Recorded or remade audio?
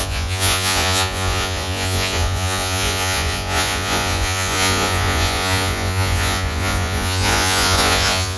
remade